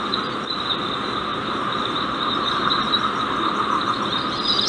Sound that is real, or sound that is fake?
real